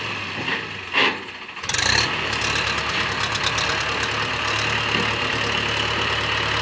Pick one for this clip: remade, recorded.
recorded